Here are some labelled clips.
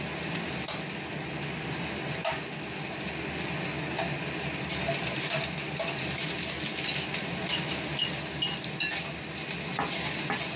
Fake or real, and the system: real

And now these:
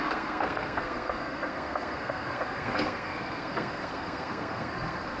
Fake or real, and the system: fake, codec, SNAC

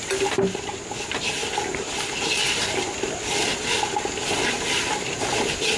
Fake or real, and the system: real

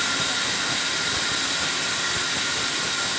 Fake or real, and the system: real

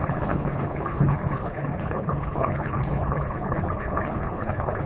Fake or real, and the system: fake, codec, HILCodec